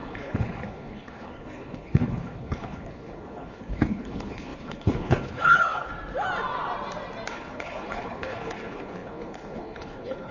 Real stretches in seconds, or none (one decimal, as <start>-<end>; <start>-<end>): 5.9-7.3